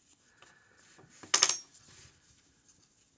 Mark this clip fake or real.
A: real